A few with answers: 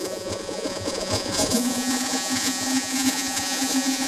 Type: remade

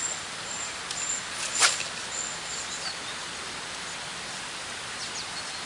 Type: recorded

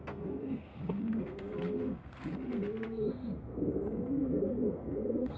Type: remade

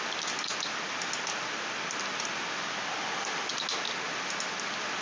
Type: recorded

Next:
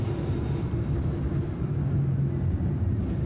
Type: recorded